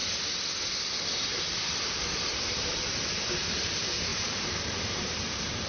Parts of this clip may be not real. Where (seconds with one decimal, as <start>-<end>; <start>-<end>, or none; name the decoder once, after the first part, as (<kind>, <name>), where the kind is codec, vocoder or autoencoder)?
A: 3.4-5.7 (vocoder, BigVGAN v2)